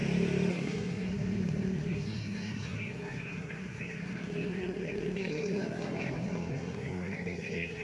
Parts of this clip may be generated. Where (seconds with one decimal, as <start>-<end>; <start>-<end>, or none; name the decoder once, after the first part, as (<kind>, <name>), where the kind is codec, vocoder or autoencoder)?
0.5-7.8 (codec, SNAC)